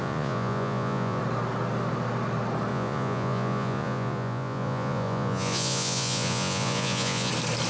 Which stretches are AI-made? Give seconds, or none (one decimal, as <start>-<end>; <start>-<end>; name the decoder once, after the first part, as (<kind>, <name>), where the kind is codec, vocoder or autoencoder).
0.0-1.2 (vocoder, Vocos); 2.7-7.3